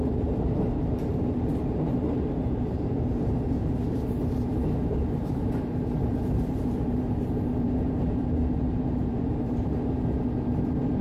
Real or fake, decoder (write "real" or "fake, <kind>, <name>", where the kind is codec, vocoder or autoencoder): fake, vocoder, BigVGAN v2